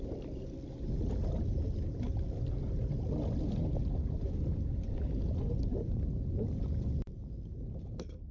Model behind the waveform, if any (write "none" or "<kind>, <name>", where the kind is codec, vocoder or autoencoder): none